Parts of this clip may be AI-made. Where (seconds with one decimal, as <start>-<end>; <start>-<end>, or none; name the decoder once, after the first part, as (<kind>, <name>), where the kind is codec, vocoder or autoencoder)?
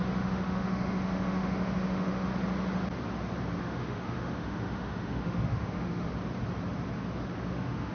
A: 0.0-2.3 (autoencoder, DAC-VAE); 3.6-6.1; 7.5-7.9